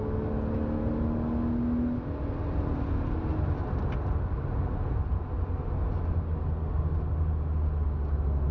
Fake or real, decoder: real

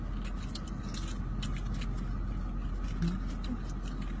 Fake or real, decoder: real